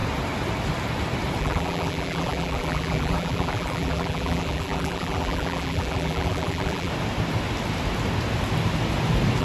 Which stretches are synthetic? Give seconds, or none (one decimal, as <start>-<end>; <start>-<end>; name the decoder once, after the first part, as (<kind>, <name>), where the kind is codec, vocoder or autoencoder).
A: 1.4-6.9 (vocoder, BigVGAN v2)

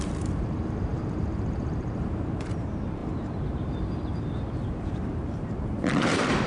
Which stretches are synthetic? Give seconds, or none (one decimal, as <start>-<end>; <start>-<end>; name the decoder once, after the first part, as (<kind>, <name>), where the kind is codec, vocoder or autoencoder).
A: 0.0-6.5 (vocoder, BigVGAN v2)

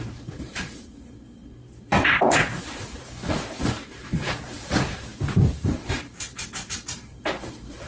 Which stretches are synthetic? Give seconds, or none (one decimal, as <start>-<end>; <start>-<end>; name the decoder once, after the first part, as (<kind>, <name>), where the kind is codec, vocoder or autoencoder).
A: 0.0-5.1 (vocoder, BigVGAN v2); 5.6-7.9

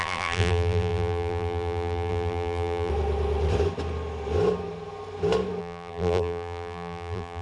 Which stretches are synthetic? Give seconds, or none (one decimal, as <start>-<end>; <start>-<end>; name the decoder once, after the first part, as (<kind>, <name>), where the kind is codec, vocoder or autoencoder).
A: 0.0-2.9 (vocoder, BigVGAN v2); 5.6-7.4

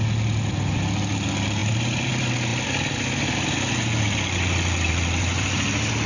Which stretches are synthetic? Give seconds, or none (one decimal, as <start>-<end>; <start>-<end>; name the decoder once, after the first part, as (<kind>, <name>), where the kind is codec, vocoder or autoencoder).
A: 1.6-2.1 (vocoder, BigVGAN v2)

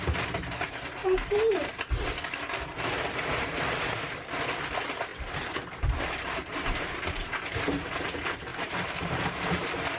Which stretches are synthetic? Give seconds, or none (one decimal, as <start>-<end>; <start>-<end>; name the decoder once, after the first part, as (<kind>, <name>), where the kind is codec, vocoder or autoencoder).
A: 1.0-1.8 (vocoder, BigVGAN v2); 3.3-3.8; 5.1-7.4; 8.5-10.0

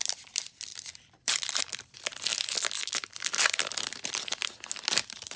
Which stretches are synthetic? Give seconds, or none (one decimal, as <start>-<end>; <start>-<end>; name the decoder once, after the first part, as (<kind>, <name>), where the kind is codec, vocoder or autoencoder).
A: 0.0-2.3 (vocoder, BigVGAN v2); 3.1-5.4